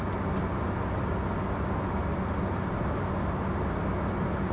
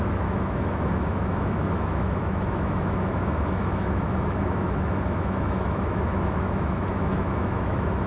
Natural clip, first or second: first